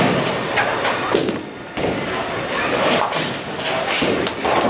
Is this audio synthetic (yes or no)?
no